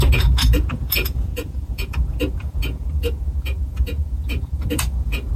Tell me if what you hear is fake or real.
fake